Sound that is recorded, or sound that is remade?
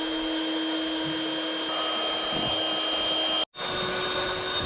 recorded